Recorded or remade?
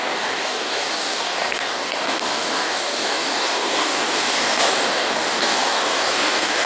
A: remade